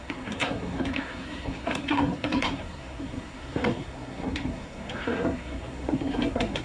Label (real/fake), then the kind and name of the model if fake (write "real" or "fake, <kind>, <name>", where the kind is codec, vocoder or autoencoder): fake, codec, SNAC